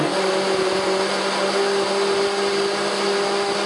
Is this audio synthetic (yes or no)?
no